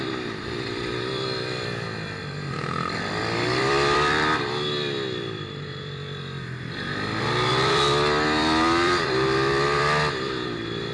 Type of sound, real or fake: fake